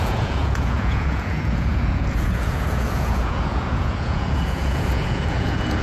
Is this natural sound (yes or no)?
no